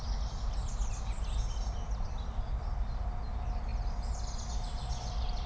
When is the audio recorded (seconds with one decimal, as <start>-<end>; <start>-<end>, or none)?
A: 0.0-5.5